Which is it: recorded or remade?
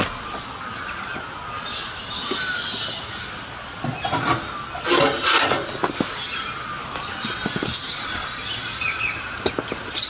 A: recorded